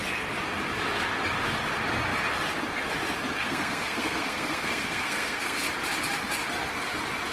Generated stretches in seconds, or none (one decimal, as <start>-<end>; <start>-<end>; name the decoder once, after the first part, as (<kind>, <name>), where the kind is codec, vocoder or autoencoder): 3.4-5.6 (codec, SNAC)